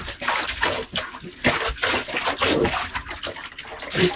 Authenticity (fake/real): real